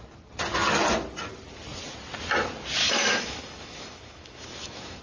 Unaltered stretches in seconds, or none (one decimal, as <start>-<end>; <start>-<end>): 0.0-2.8